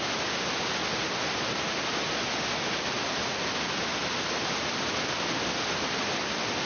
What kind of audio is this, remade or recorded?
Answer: recorded